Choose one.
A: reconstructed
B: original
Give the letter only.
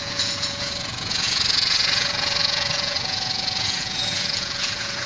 A